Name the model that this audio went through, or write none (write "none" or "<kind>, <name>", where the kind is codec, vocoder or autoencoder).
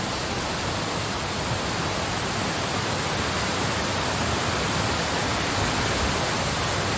none